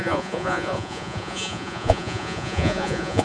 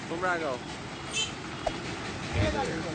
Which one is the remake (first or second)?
first